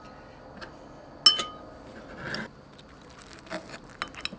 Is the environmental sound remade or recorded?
recorded